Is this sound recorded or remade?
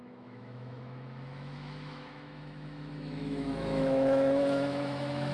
remade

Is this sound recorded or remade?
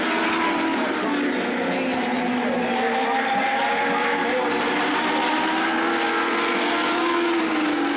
recorded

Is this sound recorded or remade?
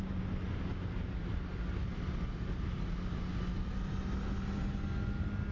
recorded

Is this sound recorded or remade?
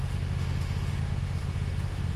remade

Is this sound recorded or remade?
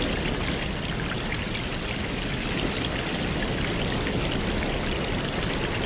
recorded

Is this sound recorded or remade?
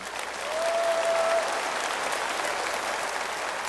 recorded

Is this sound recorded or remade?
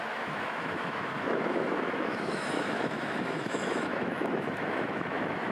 remade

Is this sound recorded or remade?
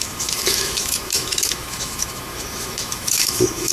remade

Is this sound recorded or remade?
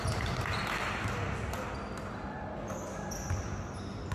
recorded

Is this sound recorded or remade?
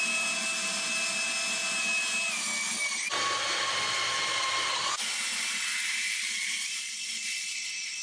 recorded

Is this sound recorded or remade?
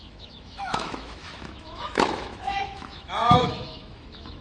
remade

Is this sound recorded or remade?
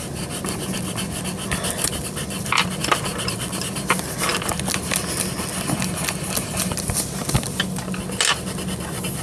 recorded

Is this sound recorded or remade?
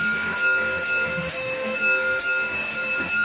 remade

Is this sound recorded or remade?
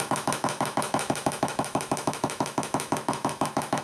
remade